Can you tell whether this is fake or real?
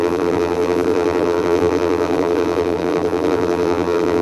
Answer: fake